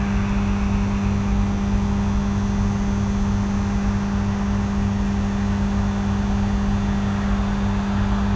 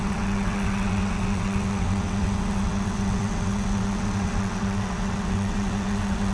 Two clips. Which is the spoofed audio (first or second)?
second